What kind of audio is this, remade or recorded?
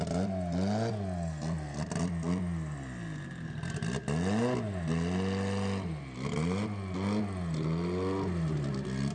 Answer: recorded